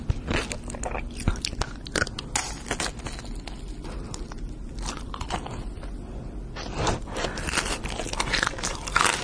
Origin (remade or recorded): recorded